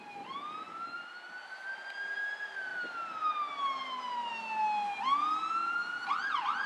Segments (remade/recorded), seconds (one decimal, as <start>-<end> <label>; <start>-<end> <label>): 0.0-6.7 recorded